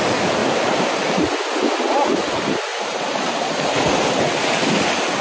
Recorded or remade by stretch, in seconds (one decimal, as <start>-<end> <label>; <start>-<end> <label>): 0.0-0.4 recorded; 0.4-1.2 remade; 1.2-2.7 recorded; 2.7-3.4 remade; 3.4-5.2 recorded